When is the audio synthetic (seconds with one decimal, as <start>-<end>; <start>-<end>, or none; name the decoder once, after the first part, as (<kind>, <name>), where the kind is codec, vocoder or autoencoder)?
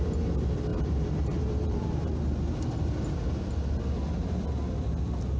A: 0.7-2.1 (vocoder, BigVGAN v2)